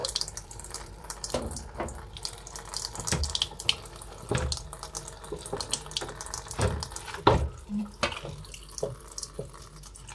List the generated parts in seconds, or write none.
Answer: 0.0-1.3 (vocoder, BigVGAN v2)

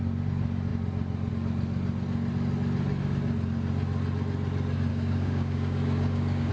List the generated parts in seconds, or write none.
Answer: 4.9-6.5 (codec, DAC)

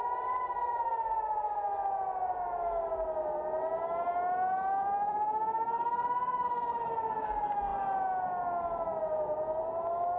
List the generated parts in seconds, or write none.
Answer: none

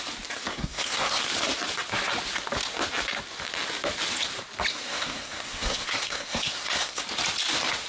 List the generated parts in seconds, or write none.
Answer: 0.5-1.2 (codec, SNAC); 4.7-7.0

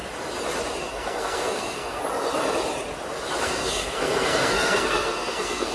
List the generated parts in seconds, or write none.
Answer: 0.8-2.0 (codec, SNAC); 3.4-5.7

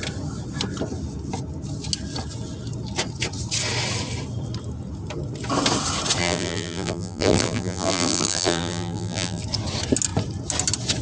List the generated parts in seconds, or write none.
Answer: 6.2-9.4 (vocoder, BigVGAN v2)